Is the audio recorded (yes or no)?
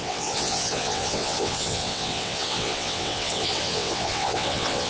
no